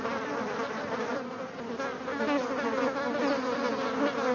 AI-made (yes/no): no